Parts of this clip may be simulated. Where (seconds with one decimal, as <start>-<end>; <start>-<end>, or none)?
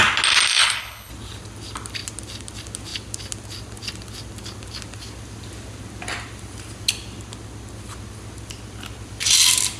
0.5-1.1